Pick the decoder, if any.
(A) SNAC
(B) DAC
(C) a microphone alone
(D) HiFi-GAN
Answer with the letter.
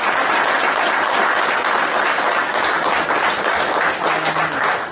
C